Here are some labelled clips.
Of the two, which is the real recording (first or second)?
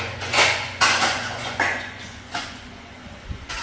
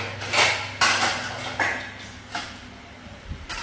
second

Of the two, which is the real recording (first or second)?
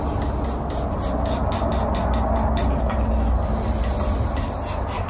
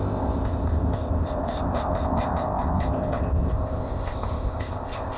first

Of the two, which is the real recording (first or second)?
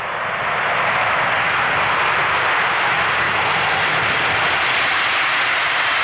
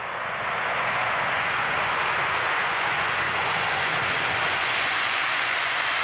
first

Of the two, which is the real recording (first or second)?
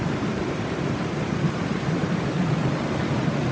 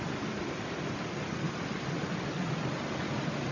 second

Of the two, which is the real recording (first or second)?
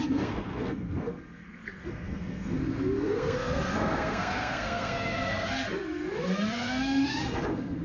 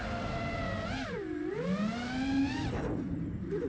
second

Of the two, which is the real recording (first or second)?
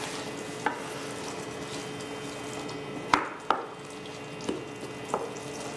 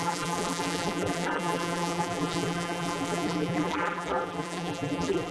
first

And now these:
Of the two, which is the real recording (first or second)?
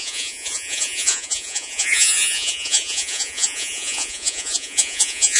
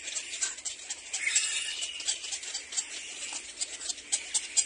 second